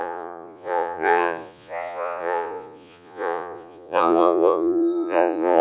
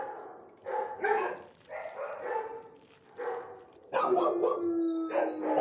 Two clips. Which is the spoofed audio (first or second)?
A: first